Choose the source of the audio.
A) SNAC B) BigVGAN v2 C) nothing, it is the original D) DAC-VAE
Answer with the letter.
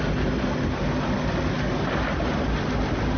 C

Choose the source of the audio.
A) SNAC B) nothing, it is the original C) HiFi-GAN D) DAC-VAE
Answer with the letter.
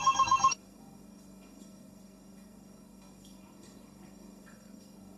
A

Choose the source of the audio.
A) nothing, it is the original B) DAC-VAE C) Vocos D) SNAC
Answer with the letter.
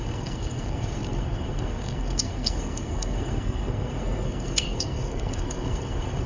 D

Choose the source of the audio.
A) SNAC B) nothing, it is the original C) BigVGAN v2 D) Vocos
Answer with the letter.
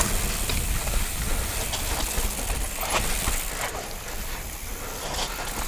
B